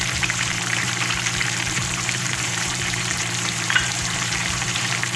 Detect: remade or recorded remade